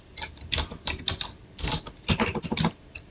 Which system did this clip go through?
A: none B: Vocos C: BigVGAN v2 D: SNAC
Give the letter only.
C